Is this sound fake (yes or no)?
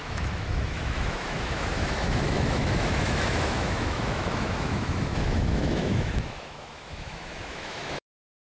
yes